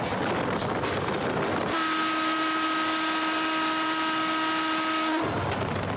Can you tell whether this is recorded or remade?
remade